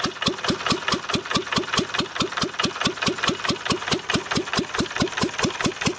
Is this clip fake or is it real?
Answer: real